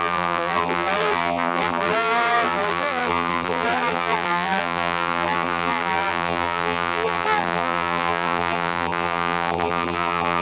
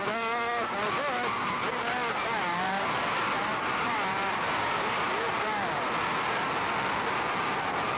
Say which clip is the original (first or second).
second